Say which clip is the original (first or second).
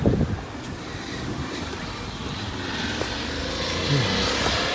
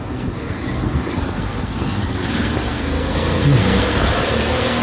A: first